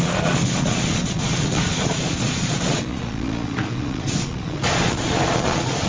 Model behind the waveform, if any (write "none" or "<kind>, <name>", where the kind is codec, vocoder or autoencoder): vocoder, Vocos